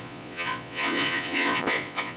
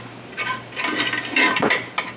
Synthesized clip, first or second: first